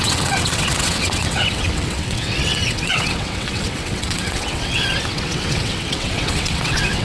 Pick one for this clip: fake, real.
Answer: fake